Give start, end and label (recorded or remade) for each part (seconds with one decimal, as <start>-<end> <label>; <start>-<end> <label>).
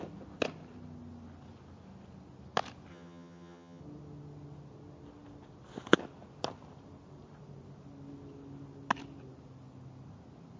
0.0-2.9 recorded; 2.9-3.8 remade; 3.8-10.6 recorded